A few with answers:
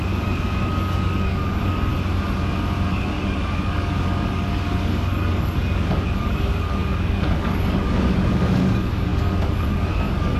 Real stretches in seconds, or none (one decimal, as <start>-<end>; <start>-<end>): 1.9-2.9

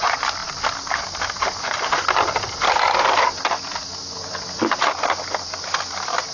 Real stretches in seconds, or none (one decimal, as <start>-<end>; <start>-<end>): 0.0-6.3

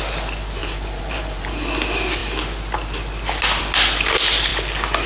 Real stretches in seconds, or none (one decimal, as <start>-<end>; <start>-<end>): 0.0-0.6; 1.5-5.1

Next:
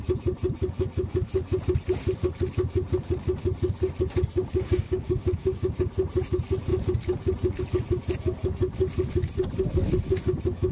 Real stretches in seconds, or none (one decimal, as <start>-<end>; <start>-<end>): 0.0-4.6; 5.9-10.7